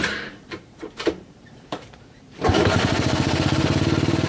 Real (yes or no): no